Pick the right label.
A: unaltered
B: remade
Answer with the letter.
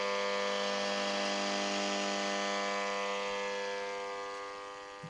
A